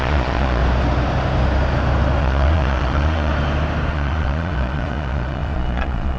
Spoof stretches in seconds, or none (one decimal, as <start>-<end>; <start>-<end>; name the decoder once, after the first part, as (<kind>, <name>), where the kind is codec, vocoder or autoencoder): 0.0-0.6 (vocoder, Vocos); 2.2-3.3; 3.9-6.2